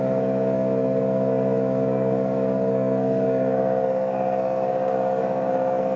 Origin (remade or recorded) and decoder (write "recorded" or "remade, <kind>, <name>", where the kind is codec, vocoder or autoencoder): remade, codec, SNAC